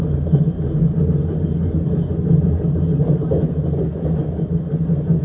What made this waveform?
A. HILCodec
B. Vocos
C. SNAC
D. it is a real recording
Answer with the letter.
D